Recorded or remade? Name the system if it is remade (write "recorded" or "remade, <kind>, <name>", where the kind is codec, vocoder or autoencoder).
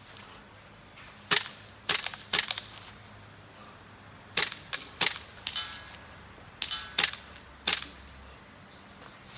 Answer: recorded